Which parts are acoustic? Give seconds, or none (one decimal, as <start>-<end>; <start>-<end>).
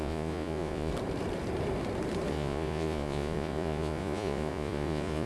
0.9-2.3